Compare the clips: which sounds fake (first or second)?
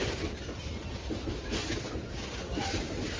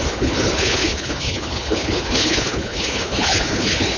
second